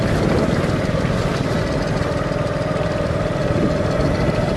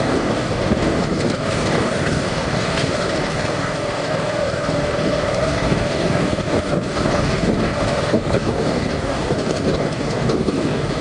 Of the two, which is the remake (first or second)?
second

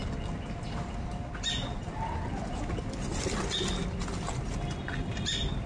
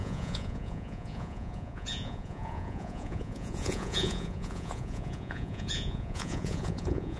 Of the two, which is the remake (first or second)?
second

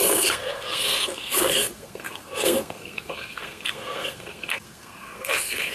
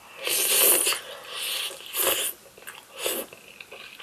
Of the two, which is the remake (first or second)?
first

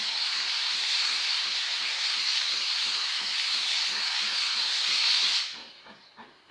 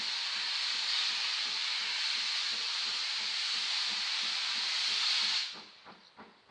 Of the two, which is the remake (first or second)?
first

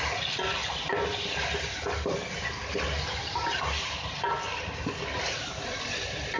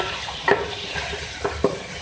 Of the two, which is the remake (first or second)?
second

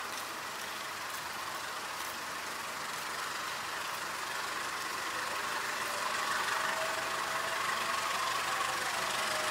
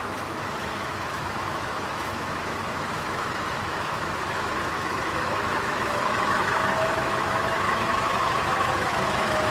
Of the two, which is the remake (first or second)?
second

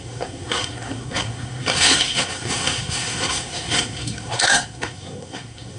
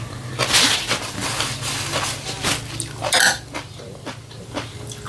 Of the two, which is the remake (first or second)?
first